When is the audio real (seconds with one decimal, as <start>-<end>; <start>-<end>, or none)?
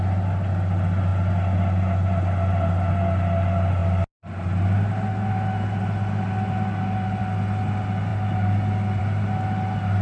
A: 0.0-10.0